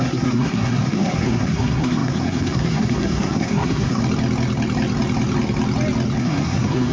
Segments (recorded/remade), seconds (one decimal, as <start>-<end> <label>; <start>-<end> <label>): 0.0-4.0 remade; 4.0-6.2 recorded; 6.2-6.9 remade